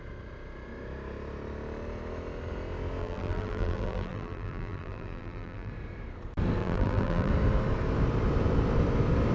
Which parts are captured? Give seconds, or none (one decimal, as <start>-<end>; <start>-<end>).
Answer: 0.0-3.0; 5.7-6.6; 7.3-9.3